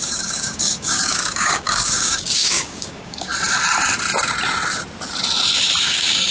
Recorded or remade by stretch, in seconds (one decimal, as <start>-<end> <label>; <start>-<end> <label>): 0.0-3.3 remade; 3.3-5.8 recorded; 5.8-6.3 remade